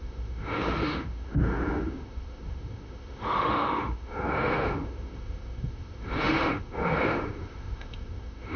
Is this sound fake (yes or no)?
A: yes